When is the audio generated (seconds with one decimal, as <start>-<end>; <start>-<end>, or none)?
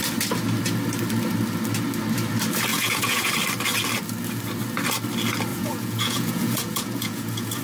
2.7-3.3; 5.5-7.6